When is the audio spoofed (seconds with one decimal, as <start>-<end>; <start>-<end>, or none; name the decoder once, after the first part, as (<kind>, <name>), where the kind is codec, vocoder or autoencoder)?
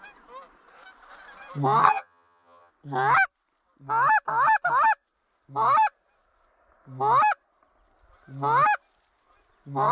1.8-2.7 (vocoder, HiFi-GAN)